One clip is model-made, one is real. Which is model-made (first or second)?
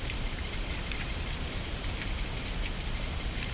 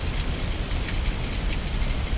first